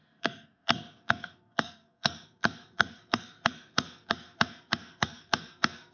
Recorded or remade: remade